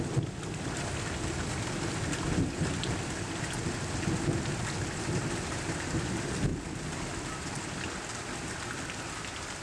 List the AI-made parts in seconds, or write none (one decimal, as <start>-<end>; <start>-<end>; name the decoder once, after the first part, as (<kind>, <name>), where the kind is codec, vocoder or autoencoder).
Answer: none